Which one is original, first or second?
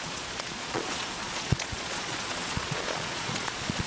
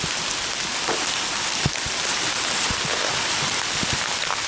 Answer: second